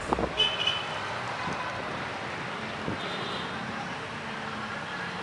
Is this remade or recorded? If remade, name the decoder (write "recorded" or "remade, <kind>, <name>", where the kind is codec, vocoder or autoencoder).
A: recorded